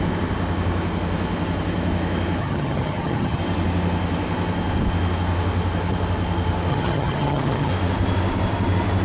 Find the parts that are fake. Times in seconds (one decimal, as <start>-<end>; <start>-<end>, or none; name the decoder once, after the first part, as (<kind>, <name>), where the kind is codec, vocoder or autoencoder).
2.4-3.4 (vocoder, HiFi-GAN); 6.7-7.7

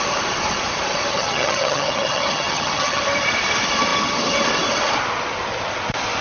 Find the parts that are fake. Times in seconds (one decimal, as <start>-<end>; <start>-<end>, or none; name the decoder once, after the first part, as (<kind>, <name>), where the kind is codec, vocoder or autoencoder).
1.1-3.0 (vocoder, HiFi-GAN)

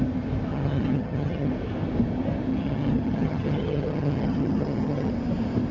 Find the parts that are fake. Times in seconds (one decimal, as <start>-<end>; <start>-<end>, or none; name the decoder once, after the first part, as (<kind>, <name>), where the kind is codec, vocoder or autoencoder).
0.5-1.5 (vocoder, HiFi-GAN); 2.5-5.1